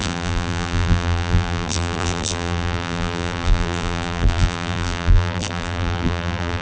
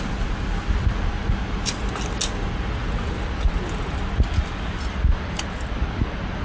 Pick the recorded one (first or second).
second